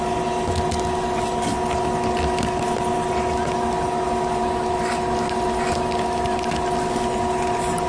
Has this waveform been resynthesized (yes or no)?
no